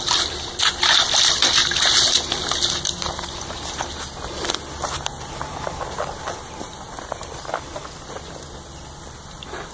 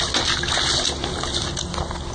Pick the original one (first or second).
second